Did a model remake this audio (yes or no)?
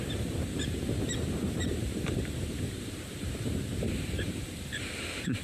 yes